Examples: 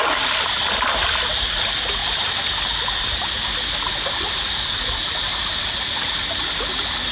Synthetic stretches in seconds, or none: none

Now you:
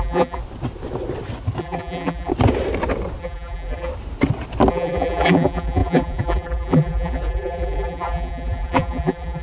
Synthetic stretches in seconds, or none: 0.0-0.4 (vocoder, BigVGAN v2); 1.6-2.3; 3.2-3.9; 4.7-9.4

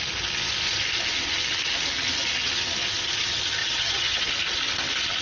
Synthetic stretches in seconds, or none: 3.6-4.3 (vocoder, HiFi-GAN)

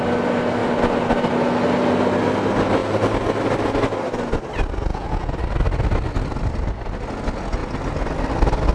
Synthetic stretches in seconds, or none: 4.9-5.4 (vocoder, Vocos)

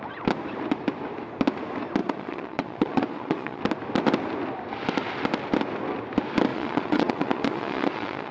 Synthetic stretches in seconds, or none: 2.0-3.6 (vocoder, Vocos); 6.5-8.3